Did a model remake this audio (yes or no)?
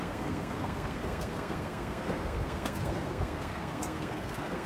yes